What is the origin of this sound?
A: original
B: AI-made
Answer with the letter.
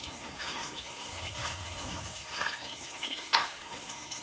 B